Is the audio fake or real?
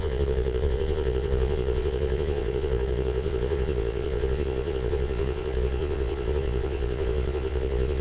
fake